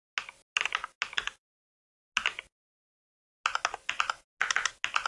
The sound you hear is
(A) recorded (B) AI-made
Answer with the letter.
A